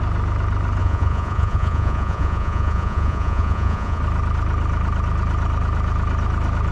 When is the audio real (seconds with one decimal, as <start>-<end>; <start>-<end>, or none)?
0.0-0.8; 4.0-6.7